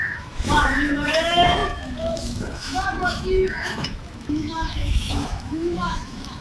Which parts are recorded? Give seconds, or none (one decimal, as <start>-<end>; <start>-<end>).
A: none